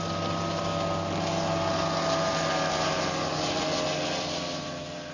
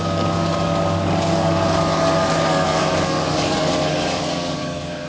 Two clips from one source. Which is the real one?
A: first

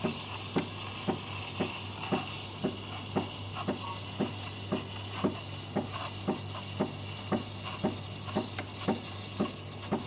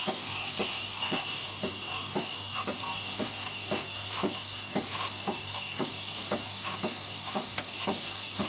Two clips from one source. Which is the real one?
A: first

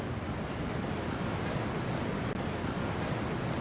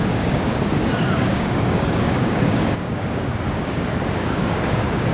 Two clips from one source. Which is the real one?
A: first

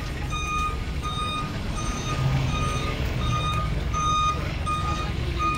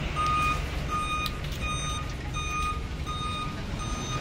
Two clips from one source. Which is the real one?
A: second